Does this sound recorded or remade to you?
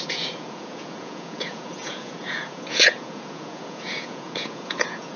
remade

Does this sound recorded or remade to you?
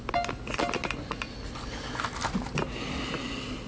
recorded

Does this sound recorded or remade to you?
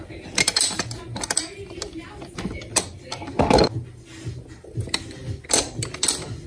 recorded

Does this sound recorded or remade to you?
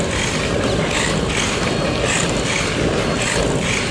recorded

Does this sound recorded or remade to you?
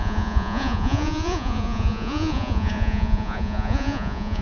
remade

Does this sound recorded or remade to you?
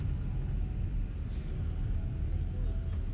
recorded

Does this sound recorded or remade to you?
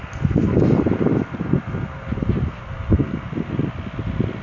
recorded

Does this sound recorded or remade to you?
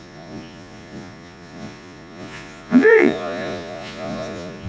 remade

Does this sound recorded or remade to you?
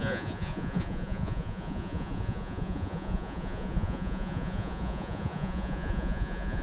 remade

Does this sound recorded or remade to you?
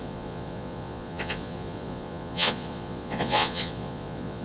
remade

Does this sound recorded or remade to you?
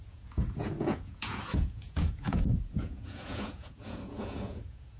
remade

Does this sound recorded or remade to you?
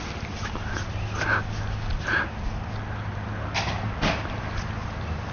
recorded